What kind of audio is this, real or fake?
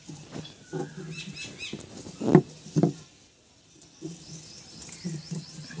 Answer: real